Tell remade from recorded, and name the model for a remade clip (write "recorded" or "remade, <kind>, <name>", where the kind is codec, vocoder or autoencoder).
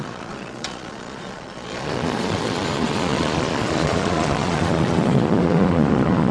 remade, vocoder, Vocos